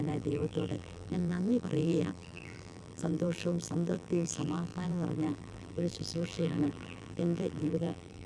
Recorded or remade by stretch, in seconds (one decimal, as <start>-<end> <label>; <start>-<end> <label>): 0.0-8.3 remade

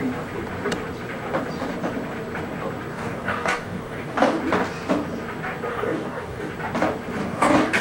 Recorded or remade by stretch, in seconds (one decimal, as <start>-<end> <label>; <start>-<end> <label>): 0.0-2.9 recorded; 2.9-4.4 remade; 4.4-5.7 recorded; 5.7-6.5 remade; 6.5-7.2 recorded; 7.2-7.8 remade

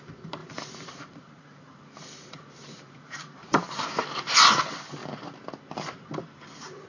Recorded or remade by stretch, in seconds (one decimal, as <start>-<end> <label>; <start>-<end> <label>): 0.0-0.4 recorded; 0.4-4.5 remade; 4.5-6.9 recorded